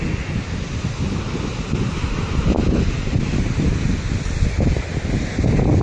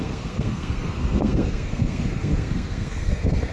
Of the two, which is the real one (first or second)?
first